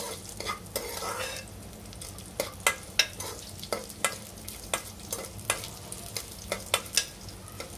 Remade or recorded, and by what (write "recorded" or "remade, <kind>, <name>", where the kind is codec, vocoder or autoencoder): recorded